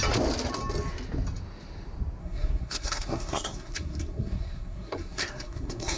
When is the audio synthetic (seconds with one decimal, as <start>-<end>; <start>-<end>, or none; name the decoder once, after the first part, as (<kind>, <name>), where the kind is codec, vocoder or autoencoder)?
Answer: 2.2-6.0 (codec, SNAC)